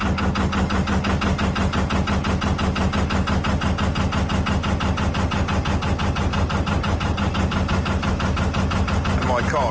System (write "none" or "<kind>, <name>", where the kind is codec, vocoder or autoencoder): none